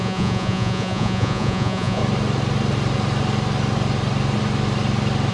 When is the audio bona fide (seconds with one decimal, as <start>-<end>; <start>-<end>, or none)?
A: 2.0-5.3